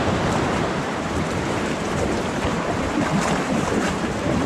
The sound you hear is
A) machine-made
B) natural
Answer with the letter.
A